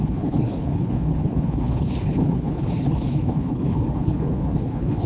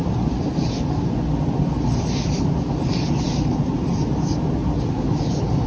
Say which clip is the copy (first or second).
first